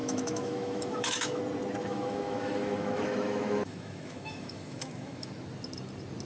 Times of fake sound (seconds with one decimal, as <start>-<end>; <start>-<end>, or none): 0.0-1.4; 1.8-5.3